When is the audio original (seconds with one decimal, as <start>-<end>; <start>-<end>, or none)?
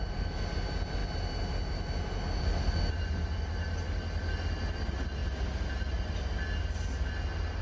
0.0-7.6